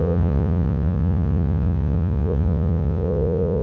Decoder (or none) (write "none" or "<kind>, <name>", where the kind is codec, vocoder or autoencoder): vocoder, Vocos